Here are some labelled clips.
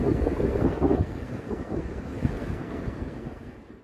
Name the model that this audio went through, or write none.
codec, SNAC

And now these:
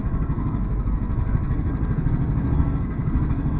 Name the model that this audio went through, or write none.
codec, SNAC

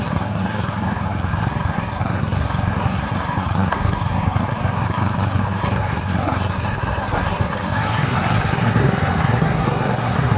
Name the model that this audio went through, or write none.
codec, SNAC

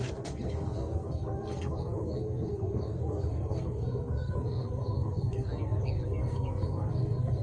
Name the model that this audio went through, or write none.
codec, SNAC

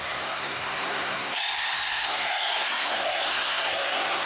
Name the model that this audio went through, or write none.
codec, SNAC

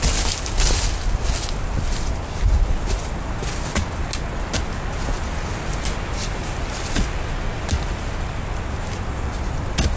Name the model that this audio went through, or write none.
none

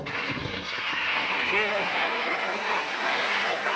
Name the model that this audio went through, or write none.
codec, SNAC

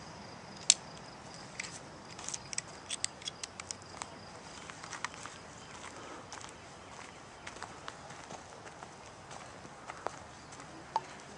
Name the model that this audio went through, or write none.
none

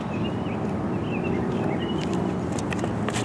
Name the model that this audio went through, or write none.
none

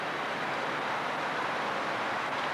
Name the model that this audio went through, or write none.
none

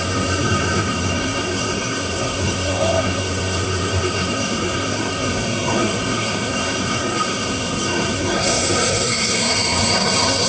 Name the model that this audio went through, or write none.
codec, SNAC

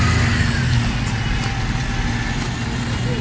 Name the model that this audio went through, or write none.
none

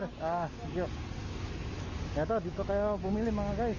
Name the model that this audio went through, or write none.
none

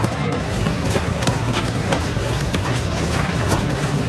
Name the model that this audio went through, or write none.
codec, SNAC